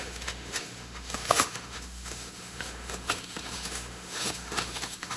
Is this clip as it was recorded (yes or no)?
no